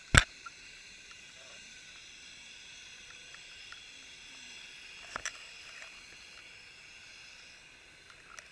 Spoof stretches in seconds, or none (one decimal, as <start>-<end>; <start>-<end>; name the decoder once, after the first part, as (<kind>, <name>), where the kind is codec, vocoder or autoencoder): none